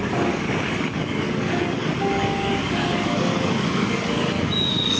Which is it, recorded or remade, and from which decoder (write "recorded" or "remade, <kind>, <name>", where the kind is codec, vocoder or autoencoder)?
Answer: remade, codec, DAC